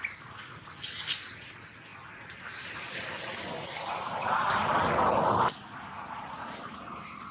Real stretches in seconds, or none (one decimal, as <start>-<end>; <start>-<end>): 0.0-7.3